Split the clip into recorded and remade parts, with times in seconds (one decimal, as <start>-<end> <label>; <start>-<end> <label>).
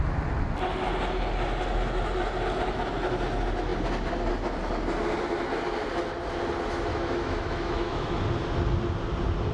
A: 0.0-6.9 recorded; 6.9-8.2 remade; 8.2-9.5 recorded